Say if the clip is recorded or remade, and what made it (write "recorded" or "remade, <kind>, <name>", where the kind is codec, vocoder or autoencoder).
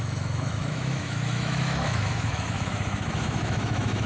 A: remade, autoencoder, DAC-VAE